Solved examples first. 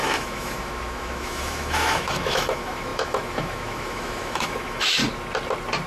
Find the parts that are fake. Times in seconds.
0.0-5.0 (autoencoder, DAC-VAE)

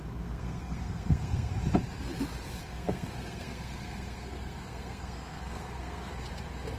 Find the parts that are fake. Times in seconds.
0.0-1.5 (codec, SNAC); 2.6-6.1

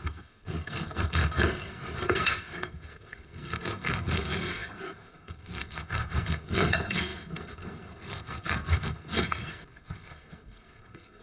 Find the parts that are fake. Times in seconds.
0.0-11.2 (codec, SNAC)